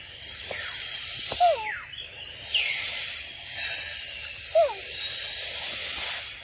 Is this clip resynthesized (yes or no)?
no